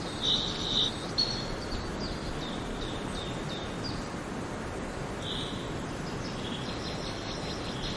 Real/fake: real